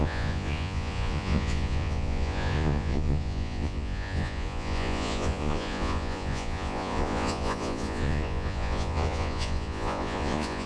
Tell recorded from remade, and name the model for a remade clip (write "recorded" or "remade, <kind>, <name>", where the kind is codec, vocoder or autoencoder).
remade, vocoder, Vocos